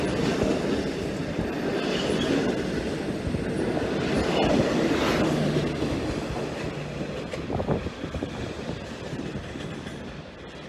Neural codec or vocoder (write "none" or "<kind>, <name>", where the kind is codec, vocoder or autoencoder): none